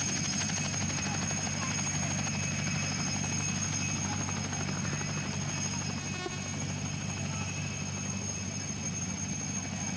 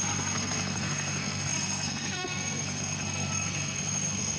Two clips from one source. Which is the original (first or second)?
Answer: first